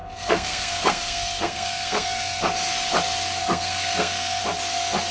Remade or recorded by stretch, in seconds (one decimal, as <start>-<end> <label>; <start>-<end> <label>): 0.0-2.4 remade; 2.4-3.4 recorded; 3.4-4.4 remade; 4.4-5.1 recorded